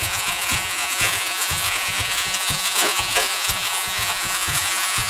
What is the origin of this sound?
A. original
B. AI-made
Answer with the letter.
B